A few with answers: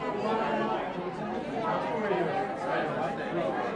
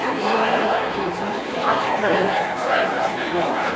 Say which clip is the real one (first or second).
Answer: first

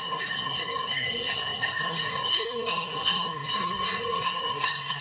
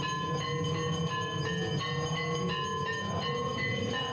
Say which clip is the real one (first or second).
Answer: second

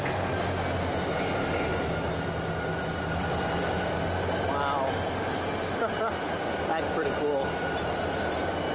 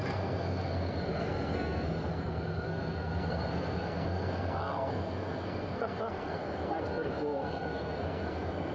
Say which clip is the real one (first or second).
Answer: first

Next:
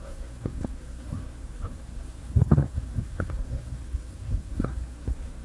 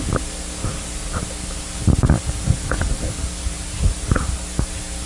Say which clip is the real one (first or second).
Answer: second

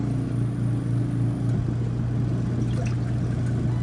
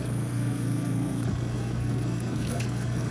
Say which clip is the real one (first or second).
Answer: first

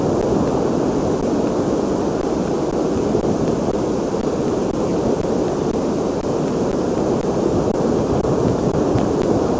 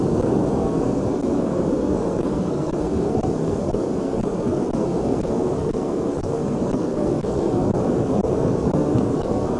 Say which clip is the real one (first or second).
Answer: first